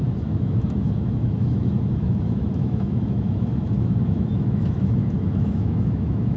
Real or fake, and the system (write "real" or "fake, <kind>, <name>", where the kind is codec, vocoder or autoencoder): fake, autoencoder, DAC-VAE